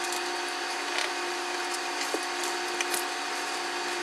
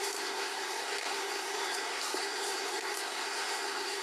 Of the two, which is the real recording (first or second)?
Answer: first